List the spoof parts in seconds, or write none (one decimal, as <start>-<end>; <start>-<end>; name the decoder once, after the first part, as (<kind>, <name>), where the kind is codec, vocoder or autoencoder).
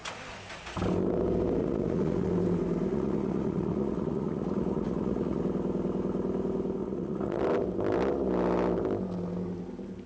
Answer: 1.6-2.3 (vocoder, Vocos); 2.9-5.4; 6.8-7.4